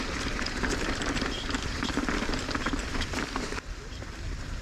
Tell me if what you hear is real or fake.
fake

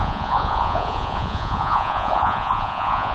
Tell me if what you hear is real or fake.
fake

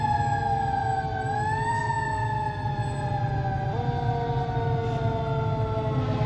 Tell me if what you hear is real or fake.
real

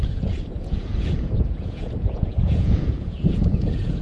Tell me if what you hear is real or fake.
fake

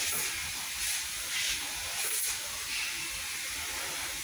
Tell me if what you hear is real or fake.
real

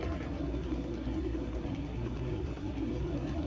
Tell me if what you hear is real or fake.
fake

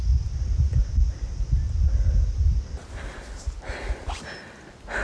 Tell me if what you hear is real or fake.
real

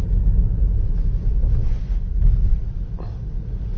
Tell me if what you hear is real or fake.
real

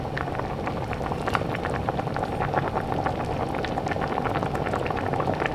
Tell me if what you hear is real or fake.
real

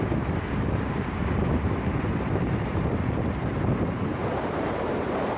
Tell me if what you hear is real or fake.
fake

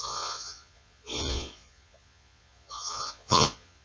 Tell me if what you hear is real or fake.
fake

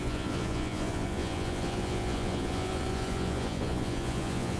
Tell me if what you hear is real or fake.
fake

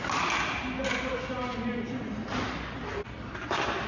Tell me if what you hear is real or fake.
real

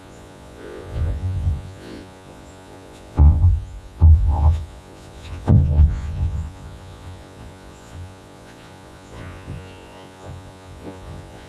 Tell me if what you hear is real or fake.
fake